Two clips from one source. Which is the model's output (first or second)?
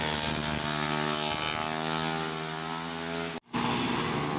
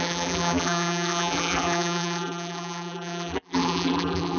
second